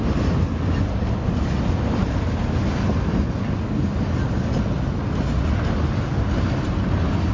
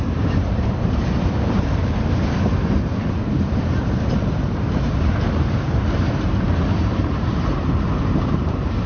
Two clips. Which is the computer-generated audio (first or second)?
second